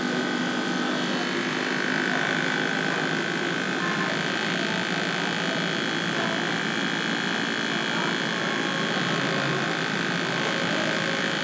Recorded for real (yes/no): yes